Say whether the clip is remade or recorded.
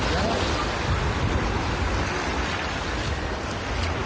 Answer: recorded